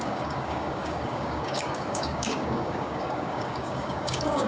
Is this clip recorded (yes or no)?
no